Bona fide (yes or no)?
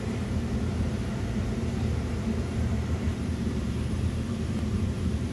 no